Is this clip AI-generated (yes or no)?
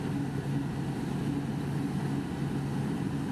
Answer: no